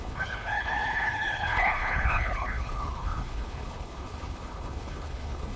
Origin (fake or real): fake